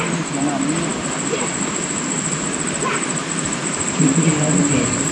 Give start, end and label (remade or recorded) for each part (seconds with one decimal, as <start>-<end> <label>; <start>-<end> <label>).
0.0-5.1 recorded